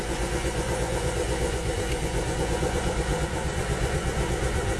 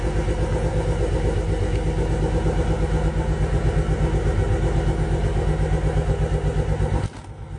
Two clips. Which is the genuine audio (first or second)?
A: second